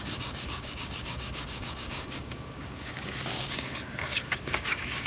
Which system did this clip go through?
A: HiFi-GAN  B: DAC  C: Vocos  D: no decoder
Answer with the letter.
B